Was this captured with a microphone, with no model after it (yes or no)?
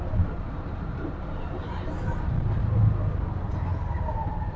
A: no